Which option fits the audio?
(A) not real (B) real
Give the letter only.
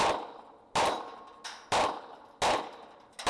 B